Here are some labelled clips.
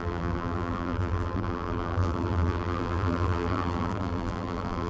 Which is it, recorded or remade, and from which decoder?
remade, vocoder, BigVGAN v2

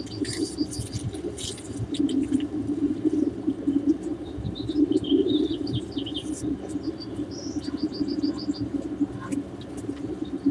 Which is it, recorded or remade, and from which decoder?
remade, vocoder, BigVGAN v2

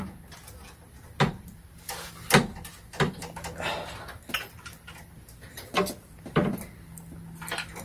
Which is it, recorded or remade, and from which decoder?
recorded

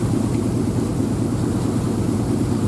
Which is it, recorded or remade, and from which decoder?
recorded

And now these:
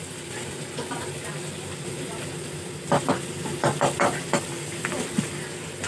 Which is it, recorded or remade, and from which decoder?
recorded